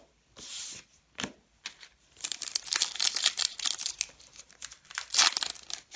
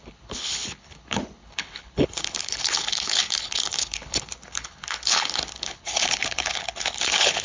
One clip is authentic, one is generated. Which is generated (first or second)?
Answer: second